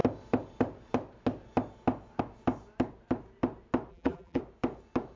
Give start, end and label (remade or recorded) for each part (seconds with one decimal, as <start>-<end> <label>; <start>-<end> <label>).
0.0-3.9 recorded; 3.9-4.4 remade; 4.4-5.2 recorded

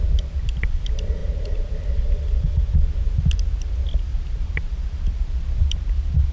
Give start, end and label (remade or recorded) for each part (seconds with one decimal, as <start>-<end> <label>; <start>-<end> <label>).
0.0-1.2 recorded; 1.2-3.0 remade; 3.0-4.1 recorded; 4.1-5.2 remade; 5.2-6.3 recorded

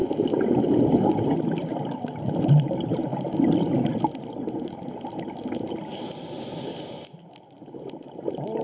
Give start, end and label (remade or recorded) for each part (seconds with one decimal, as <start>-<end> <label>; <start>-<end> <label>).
0.0-8.6 recorded

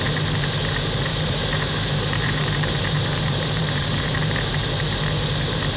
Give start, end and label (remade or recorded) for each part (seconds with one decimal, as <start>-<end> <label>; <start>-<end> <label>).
0.0-1.1 recorded; 1.1-4.6 remade; 4.6-5.8 recorded

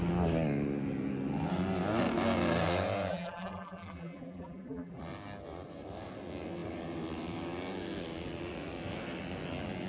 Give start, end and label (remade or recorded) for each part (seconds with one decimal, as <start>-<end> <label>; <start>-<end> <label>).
0.0-3.1 recorded; 3.1-5.0 remade; 5.0-9.9 recorded

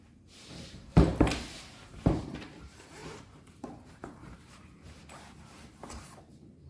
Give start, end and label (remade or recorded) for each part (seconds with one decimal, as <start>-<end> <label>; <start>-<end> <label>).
0.0-1.1 remade; 1.1-1.9 recorded; 1.9-6.7 remade

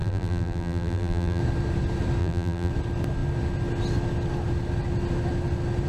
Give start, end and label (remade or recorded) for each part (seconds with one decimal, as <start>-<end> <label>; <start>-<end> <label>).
0.0-1.4 remade; 1.4-2.2 recorded; 2.2-2.7 remade; 2.7-5.9 recorded

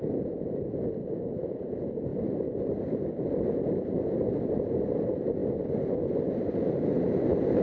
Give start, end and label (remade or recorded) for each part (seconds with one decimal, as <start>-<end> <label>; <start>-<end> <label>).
0.0-2.1 recorded; 2.1-3.9 remade; 3.9-7.6 recorded